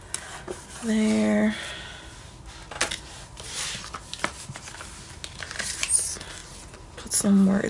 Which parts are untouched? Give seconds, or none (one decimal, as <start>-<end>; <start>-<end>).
0.0-7.7